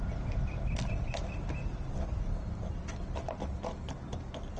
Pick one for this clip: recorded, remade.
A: recorded